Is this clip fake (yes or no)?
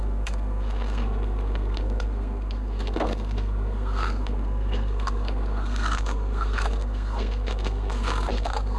yes